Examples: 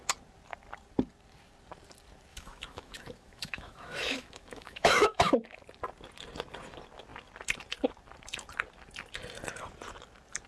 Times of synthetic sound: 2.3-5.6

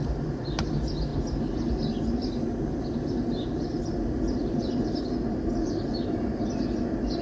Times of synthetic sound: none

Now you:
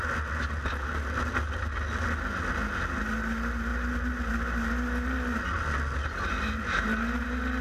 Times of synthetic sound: none

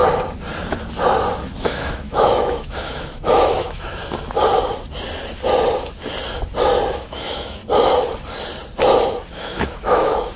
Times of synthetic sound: 1.6-4.0; 6.9-7.6; 9.3-10.4